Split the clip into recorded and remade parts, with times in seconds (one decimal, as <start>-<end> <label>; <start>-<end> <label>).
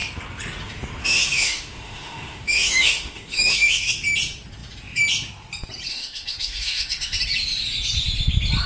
0.0-1.0 recorded; 1.0-3.9 remade; 3.9-5.9 recorded; 5.9-7.2 remade; 7.2-8.7 recorded